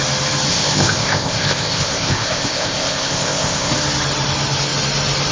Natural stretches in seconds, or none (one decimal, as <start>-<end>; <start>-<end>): 0.0-0.5; 3.7-5.3